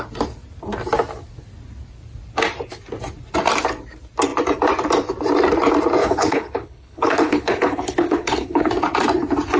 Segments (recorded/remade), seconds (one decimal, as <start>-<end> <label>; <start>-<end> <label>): 0.0-6.0 recorded; 6.0-8.7 remade; 8.7-9.6 recorded